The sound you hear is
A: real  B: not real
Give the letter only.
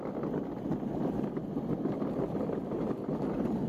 A